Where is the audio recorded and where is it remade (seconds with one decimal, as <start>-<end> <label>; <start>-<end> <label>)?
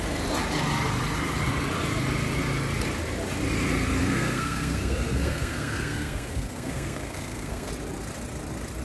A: 0.0-4.0 recorded; 4.0-7.7 remade; 7.7-8.8 recorded